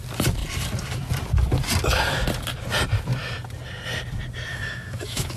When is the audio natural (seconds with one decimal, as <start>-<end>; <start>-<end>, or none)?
0.0-4.5